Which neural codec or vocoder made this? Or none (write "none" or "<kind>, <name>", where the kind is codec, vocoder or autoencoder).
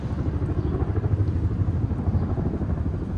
none